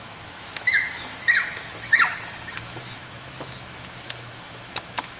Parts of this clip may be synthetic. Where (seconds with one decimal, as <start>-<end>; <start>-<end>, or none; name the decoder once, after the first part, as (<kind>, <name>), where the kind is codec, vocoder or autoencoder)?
0.0-5.2 (autoencoder, DAC-VAE)